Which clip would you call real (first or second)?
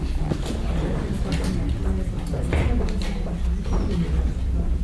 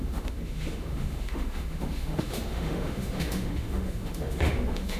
first